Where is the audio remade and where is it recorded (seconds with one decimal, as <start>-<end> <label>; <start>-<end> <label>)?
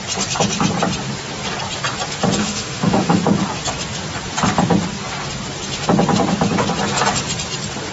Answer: 0.0-2.4 recorded; 2.4-3.2 remade; 3.2-7.9 recorded